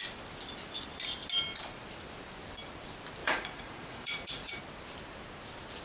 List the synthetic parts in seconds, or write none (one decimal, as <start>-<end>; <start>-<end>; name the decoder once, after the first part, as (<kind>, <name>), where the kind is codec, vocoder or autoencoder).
3.2-4.6 (vocoder, Vocos)